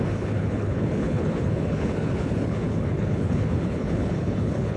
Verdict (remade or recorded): remade